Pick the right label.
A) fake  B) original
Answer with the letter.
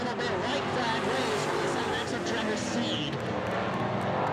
B